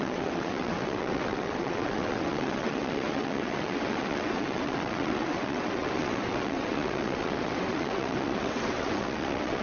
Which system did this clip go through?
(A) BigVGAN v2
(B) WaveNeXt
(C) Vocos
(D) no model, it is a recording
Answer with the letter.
B